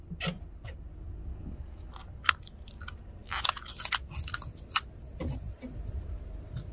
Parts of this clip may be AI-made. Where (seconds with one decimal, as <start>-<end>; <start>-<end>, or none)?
1.3-1.9